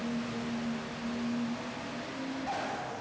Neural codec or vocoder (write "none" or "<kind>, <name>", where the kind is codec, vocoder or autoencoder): none